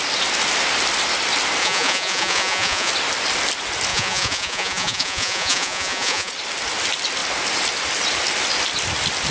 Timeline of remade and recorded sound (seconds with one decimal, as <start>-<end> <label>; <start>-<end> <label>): 0.0-1.6 recorded; 1.6-2.9 remade; 2.9-3.9 recorded; 3.9-6.3 remade; 6.3-9.3 recorded